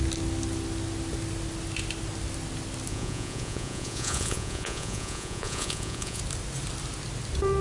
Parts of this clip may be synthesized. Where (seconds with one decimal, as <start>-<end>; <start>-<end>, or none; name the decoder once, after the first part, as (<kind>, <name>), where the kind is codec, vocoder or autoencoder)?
2.9-6.2 (vocoder, Vocos)